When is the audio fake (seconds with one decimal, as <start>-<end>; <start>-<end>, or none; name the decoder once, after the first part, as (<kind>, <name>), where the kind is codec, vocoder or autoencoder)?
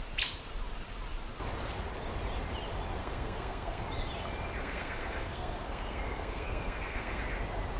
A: 3.0-3.8 (codec, SNAC); 4.6-7.2